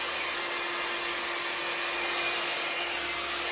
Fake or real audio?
real